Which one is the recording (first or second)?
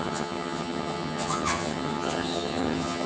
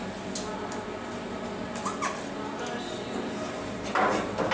second